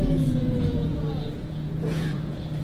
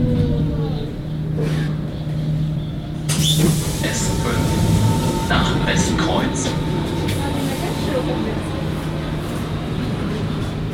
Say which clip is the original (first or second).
second